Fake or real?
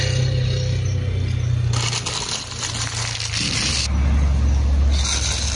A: real